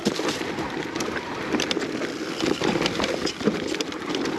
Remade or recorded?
recorded